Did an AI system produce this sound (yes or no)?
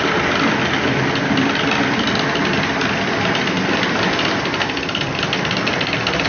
no